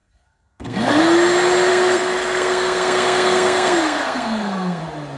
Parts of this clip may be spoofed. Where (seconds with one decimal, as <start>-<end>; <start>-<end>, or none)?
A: 0.0-1.0; 1.7-4.8